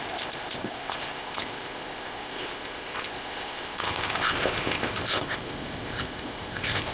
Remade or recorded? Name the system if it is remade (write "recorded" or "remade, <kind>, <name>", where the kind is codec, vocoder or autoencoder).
remade, codec, ZipCodec